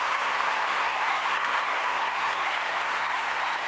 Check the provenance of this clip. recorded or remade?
remade